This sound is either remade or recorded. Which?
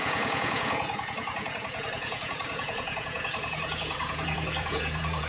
remade